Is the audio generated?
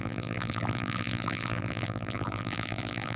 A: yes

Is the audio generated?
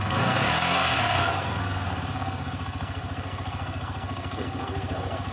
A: yes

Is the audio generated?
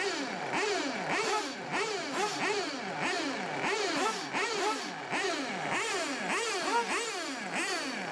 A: no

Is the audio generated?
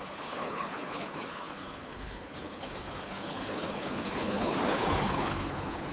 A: yes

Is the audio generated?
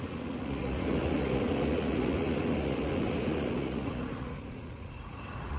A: yes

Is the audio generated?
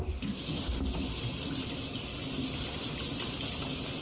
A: no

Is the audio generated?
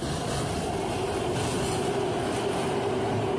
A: no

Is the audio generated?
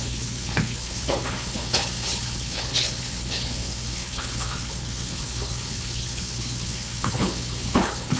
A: yes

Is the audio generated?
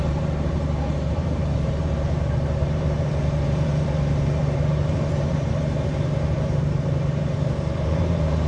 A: yes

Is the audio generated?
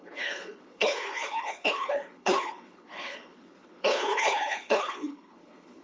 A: yes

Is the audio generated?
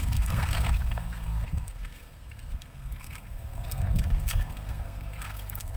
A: yes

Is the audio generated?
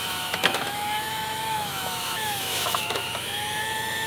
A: yes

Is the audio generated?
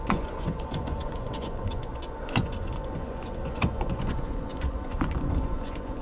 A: yes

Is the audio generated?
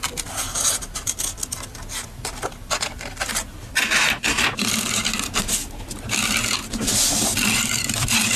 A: no